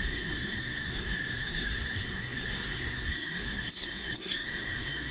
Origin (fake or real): fake